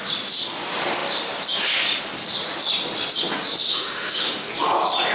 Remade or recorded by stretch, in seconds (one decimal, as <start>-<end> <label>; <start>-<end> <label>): 0.0-3.7 recorded; 3.7-4.5 remade; 4.5-5.1 recorded